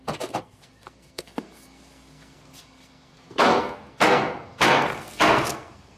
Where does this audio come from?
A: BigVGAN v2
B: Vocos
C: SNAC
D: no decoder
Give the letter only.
C